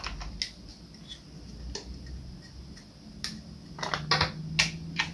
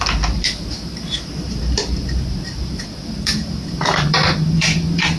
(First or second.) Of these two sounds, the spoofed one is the second